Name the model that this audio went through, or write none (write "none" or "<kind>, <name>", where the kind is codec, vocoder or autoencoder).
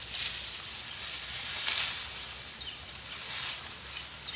none